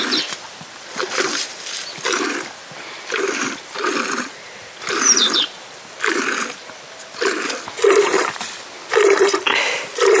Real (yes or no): no